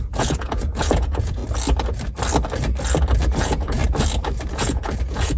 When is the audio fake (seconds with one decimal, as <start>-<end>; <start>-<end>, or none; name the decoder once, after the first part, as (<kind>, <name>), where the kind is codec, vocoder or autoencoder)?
0.0-1.4 (vocoder, Vocos); 3.3-3.8; 4.5-5.4